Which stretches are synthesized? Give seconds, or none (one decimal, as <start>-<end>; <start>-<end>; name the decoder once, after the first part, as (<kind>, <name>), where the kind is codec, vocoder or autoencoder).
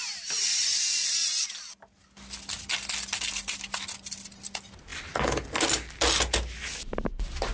none